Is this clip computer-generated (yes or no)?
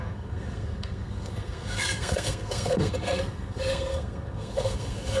yes